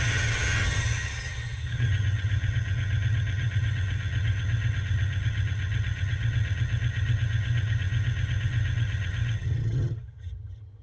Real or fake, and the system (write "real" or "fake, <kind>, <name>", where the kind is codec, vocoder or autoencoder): fake, vocoder, HiFi-GAN